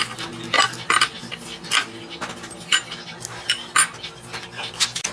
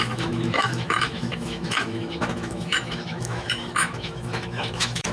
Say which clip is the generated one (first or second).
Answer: second